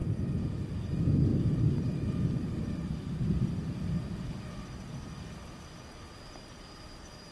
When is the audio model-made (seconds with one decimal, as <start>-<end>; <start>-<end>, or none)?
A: 0.0-0.8; 1.3-4.3